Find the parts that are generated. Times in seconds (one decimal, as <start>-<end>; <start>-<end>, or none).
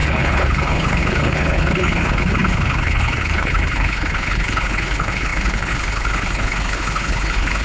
0.0-7.6